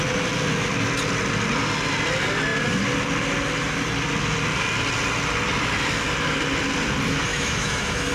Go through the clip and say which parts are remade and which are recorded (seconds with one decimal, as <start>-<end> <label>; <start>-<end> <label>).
0.0-7.3 recorded; 7.3-8.1 remade